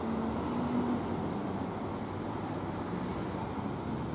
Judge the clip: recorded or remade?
recorded